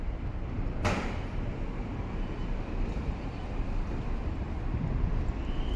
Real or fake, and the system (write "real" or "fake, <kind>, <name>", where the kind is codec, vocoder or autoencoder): fake, vocoder, BigVGAN v2